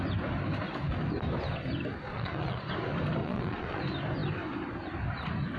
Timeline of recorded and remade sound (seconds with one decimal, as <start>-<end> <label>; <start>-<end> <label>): 0.0-2.1 recorded; 2.1-2.7 remade; 2.7-3.2 recorded; 3.2-3.8 remade; 3.8-5.6 recorded